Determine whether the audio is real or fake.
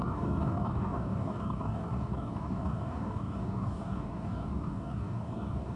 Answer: fake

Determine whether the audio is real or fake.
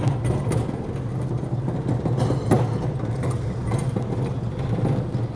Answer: real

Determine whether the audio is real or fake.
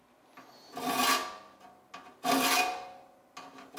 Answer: real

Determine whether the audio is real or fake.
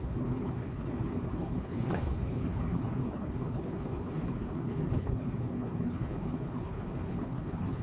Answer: fake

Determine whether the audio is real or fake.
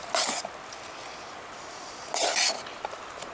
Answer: real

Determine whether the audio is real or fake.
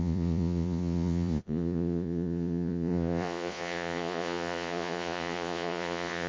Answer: fake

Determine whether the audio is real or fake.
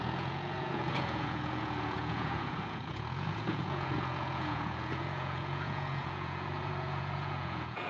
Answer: fake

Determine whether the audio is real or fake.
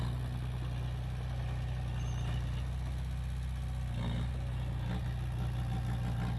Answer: real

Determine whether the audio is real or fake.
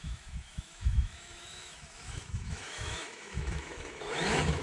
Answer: fake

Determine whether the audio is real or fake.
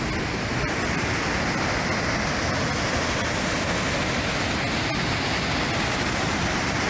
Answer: real